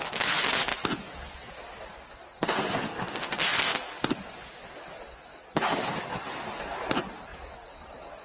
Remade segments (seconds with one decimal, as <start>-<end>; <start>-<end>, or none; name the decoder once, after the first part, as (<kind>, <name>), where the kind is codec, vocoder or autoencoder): 7.3-8.2 (vocoder, BigVGAN v2)